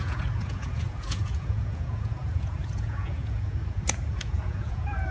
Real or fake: fake